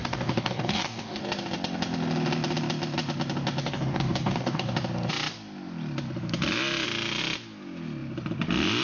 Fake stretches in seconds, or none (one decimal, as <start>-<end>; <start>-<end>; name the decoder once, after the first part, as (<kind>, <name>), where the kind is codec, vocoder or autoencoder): 0.0-1.2 (codec, DAC); 3.6-4.7